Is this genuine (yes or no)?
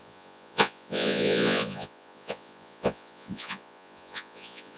no